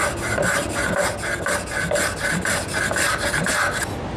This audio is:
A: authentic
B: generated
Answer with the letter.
A